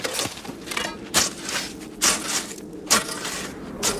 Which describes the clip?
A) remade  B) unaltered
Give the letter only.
B